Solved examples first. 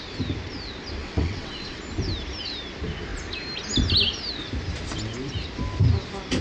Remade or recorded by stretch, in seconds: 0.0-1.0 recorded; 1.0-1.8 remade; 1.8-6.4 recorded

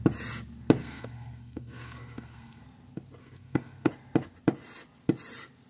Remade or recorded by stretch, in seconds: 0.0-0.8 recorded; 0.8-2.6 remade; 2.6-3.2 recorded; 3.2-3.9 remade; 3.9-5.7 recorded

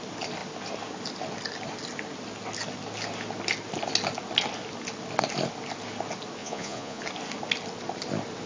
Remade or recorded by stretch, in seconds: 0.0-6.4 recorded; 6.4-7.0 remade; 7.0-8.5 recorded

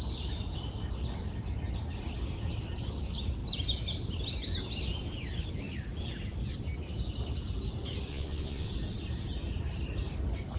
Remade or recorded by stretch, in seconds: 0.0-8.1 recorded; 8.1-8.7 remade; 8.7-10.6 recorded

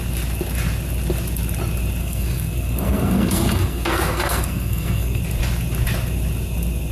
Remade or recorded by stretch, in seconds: 0.0-2.0 recorded; 2.0-5.2 remade; 5.2-6.9 recorded